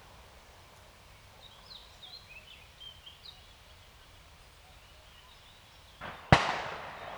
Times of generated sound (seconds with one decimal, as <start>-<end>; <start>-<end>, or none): none